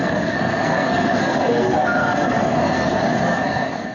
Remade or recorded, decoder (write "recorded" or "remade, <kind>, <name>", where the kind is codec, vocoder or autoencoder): remade, codec, SNAC